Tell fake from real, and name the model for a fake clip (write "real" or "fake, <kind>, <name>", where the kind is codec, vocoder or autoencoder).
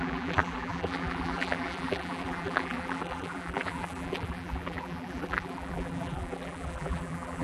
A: fake, vocoder, BigVGAN v2